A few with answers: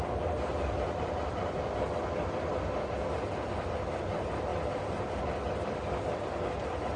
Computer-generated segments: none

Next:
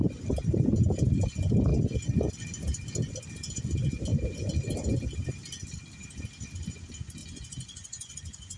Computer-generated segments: 7.2-8.6 (vocoder, Vocos)

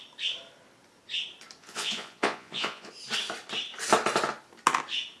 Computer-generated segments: 1.6-2.9 (vocoder, Vocos)

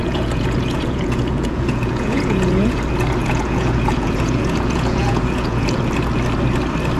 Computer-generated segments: 0.0-2.8 (vocoder, Vocos); 3.2-5.8

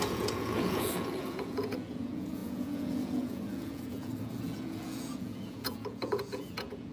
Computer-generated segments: 0.0-6.9 (vocoder, Vocos)

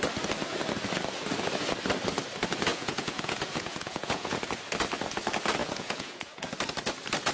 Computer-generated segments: 2.7-4.4 (vocoder, Vocos); 5.6-6.5

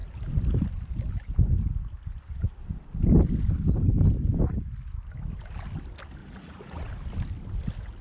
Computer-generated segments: 6.2-6.9 (vocoder, Vocos)

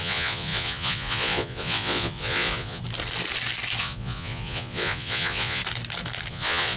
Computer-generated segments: 0.0-2.8 (vocoder, Vocos); 3.8-5.6; 6.3-6.8